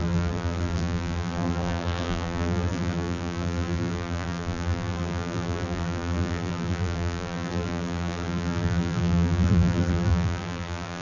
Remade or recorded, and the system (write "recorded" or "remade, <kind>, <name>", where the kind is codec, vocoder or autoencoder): remade, vocoder, BigVGAN v2